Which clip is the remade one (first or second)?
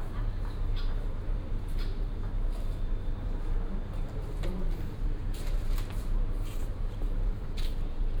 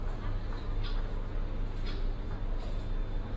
first